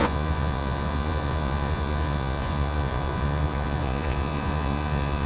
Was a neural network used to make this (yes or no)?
yes